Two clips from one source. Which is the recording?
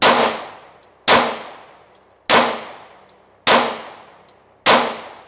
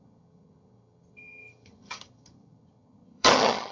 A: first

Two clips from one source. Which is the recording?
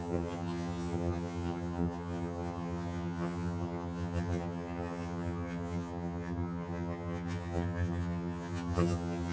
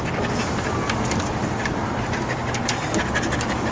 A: second